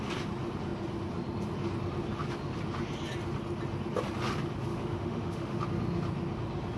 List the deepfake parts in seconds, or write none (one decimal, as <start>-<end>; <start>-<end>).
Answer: 4.7-5.6